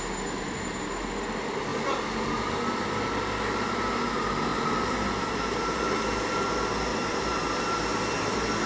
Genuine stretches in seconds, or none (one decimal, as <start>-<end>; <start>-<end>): 0.0-4.5; 6.0-6.9; 7.5-8.7